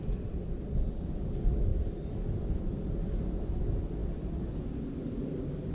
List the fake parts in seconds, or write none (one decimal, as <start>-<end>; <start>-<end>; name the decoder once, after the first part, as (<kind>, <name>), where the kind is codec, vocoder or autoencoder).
none

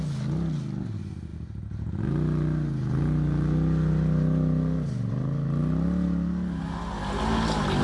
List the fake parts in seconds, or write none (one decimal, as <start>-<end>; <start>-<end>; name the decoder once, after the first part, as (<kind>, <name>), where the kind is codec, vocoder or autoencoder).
none

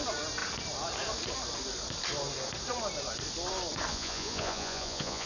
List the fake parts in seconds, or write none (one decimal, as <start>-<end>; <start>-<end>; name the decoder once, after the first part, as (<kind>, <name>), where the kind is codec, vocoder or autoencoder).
3.9-5.3 (vocoder, Vocos)

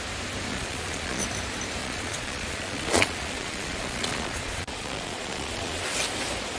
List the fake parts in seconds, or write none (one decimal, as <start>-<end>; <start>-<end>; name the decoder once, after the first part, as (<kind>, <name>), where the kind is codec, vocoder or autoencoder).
0.5-1.2 (vocoder, Vocos); 1.8-5.8